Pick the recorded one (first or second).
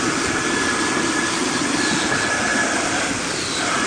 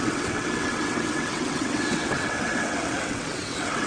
first